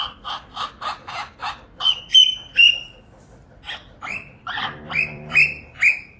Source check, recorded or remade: remade